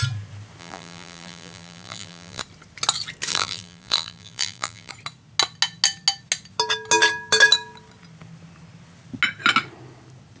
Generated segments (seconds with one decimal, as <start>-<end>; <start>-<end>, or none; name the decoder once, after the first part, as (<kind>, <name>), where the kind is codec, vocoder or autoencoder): 0.6-2.4 (vocoder, BigVGAN v2); 3.3-4.9

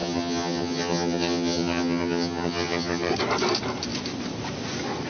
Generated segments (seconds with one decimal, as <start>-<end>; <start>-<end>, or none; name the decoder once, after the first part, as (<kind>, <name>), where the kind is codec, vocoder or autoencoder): 0.0-3.1 (vocoder, HiFi-GAN)

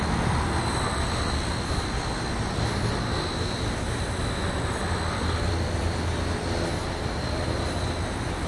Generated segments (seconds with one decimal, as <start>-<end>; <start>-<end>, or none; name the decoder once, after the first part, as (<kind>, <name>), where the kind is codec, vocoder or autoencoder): none

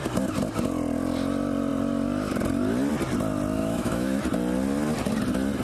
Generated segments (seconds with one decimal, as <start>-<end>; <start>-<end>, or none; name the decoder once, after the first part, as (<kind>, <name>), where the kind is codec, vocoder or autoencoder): 3.6-4.2 (autoencoder, DAC-VAE)

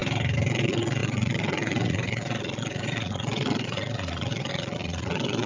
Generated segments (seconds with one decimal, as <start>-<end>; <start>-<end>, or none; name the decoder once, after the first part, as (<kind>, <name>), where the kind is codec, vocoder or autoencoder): 0.5-5.5 (vocoder, Vocos)

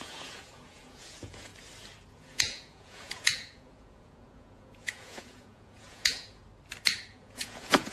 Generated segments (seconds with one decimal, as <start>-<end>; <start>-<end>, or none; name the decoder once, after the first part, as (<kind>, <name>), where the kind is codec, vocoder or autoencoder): 0.0-1.5 (vocoder, Vocos); 2.1-6.4; 7.1-7.9